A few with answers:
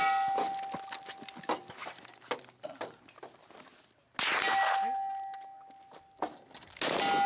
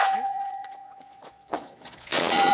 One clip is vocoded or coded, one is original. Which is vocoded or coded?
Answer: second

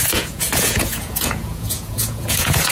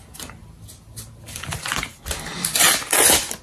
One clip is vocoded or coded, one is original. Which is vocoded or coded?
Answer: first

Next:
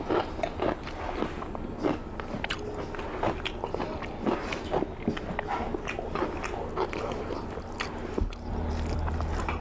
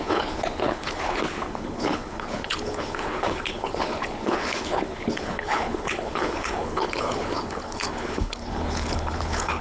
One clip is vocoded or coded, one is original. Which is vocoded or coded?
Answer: second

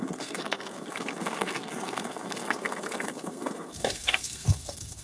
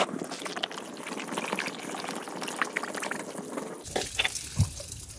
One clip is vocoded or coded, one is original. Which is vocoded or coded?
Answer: first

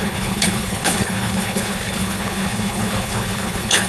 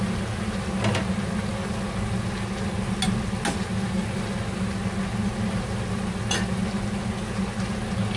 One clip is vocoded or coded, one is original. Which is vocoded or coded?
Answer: first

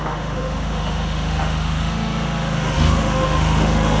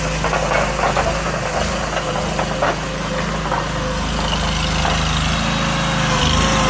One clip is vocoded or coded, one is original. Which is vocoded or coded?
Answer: first